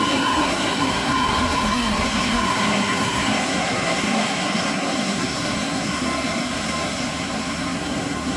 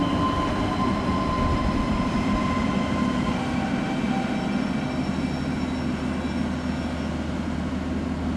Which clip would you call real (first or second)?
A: second